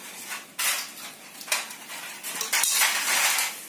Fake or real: real